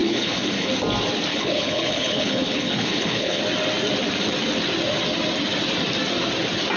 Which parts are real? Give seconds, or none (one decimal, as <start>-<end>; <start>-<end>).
0.7-1.3; 3.4-6.8